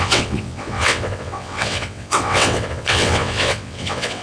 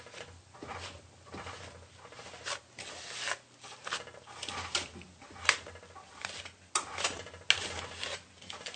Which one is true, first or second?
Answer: second